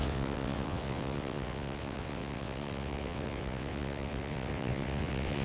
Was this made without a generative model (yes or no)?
no